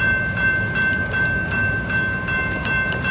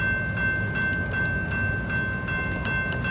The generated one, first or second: first